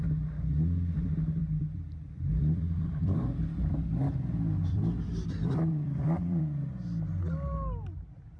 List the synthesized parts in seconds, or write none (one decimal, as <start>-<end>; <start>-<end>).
1.4-6.4